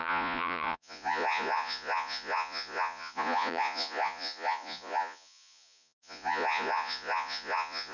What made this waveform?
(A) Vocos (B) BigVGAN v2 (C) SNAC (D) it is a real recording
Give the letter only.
A